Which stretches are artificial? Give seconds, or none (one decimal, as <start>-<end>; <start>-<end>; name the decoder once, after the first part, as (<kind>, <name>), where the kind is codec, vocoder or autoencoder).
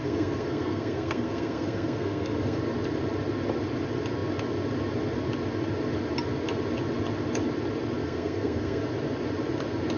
0.0-2.6 (codec, SNAC); 8.0-8.8